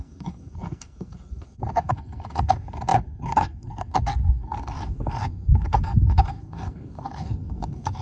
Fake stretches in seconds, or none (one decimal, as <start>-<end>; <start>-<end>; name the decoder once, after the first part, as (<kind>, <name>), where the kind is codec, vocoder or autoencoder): 0.0-8.0 (codec, SNAC)